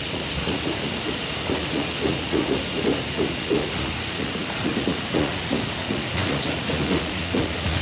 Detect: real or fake fake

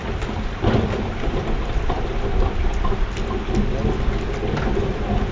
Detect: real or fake real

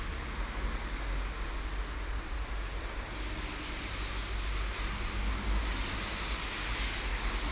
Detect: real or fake real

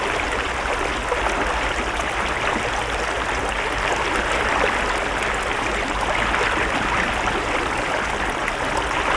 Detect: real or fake real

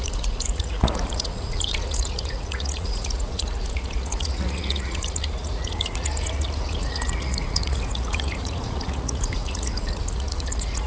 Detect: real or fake fake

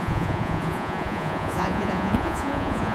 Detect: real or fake fake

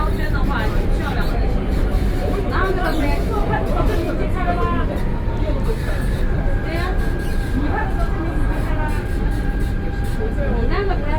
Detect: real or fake real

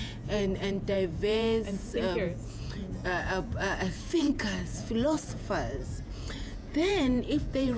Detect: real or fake fake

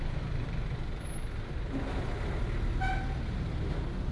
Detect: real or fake real